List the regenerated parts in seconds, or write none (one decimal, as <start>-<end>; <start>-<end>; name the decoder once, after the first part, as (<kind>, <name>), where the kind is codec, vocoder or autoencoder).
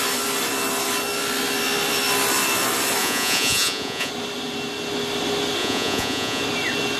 3.0-4.1 (vocoder, Vocos); 5.6-6.4